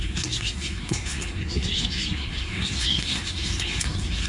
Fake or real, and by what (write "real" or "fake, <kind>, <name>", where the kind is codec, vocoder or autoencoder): fake, codec, SNAC